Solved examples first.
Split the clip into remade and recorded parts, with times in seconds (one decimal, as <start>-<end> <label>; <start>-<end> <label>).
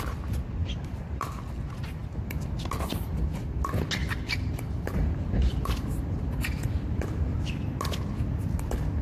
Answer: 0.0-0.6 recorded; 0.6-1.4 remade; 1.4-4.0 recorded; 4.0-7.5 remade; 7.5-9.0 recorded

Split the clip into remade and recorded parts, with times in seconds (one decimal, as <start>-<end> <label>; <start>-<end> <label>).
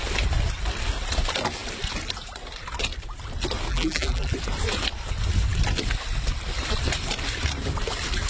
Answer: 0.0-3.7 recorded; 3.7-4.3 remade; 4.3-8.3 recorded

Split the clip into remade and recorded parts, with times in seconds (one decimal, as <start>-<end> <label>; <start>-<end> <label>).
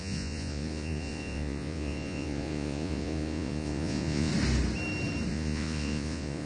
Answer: 0.0-4.3 remade; 4.3-5.3 recorded; 5.3-6.5 remade